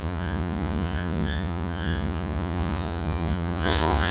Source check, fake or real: fake